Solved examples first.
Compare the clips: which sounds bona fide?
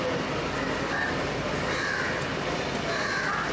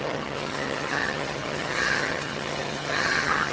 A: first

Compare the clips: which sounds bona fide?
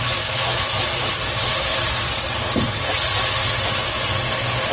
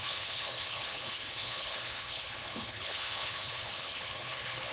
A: first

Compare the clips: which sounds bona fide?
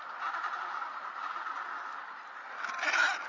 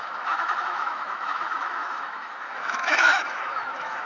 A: first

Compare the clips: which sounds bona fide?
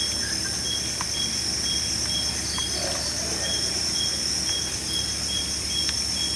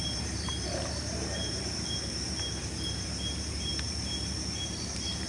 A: first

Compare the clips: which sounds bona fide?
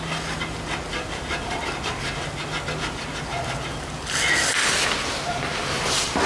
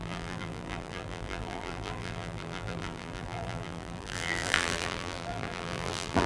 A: first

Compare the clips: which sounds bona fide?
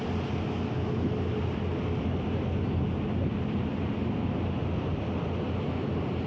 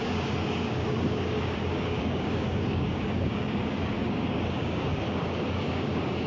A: first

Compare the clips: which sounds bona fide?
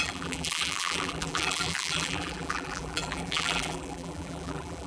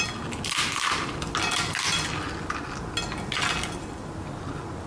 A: second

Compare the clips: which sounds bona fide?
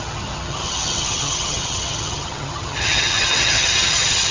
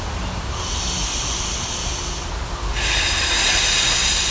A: second